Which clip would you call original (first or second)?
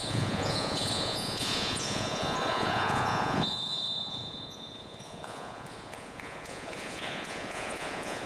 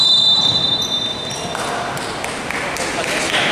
second